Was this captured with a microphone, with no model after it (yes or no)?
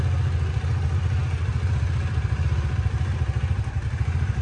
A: yes